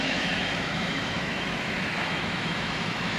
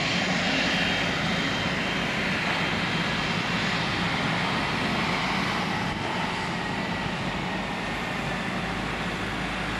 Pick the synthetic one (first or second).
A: first